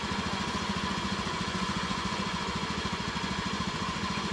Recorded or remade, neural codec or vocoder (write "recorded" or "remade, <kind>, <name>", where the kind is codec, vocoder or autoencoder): remade, vocoder, Vocos